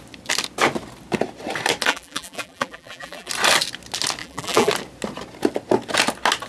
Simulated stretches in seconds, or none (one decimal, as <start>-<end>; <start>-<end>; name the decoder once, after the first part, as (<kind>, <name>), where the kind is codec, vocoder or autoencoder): 1.9-3.3 (vocoder, BigVGAN v2); 4.2-4.7